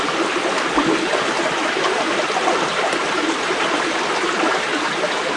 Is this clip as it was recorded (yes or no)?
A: yes